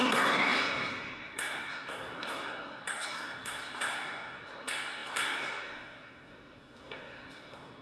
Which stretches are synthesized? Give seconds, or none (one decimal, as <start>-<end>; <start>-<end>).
0.0-7.8